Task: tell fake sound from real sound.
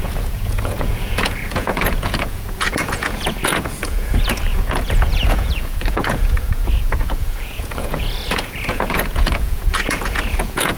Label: fake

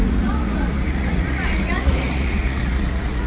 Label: fake